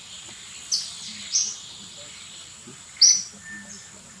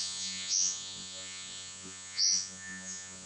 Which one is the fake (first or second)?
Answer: second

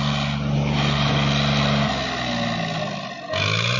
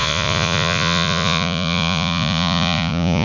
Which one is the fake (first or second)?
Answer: second